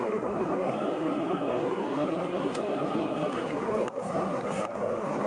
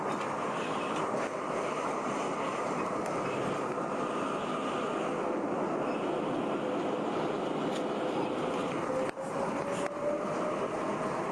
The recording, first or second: second